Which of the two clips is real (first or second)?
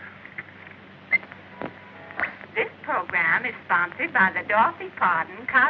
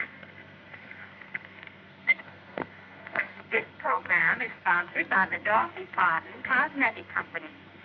first